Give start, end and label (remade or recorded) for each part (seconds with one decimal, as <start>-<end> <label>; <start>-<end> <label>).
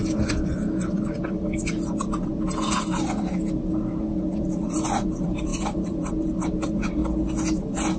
0.0-2.3 remade; 2.3-4.7 recorded; 4.7-7.0 remade; 7.0-8.0 recorded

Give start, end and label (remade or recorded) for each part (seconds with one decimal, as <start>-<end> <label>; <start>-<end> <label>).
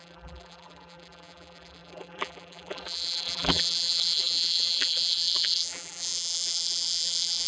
0.0-7.5 remade